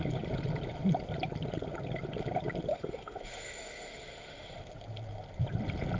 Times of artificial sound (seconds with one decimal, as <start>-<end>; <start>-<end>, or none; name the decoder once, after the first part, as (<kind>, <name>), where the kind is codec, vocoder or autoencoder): 2.7-4.5 (autoencoder, DAC-VAE)